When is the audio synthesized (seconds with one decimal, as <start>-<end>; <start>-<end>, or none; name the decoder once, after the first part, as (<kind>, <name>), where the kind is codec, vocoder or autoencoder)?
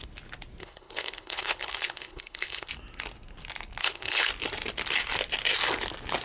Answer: 0.6-2.7 (codec, HILCodec); 3.8-4.3